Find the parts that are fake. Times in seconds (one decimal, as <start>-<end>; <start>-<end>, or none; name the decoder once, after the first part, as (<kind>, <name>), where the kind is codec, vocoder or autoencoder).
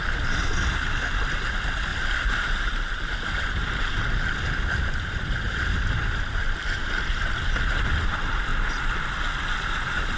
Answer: 0.0-1.9 (vocoder, BigVGAN v2); 2.8-8.5; 9.6-10.2